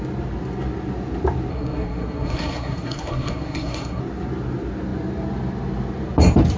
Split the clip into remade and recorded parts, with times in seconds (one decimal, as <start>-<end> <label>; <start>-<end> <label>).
0.0-1.5 recorded; 1.5-4.0 remade; 4.0-6.6 recorded